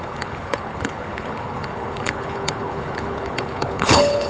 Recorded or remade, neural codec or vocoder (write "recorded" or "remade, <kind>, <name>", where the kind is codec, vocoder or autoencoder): remade, codec, HILCodec